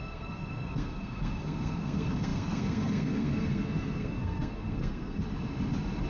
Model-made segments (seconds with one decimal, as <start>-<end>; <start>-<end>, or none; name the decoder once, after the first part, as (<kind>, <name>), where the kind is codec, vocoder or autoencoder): 0.0-5.2 (codec, SNAC)